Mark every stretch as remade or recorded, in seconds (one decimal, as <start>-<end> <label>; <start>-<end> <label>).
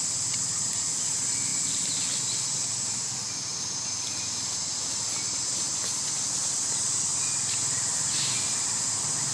0.0-9.3 recorded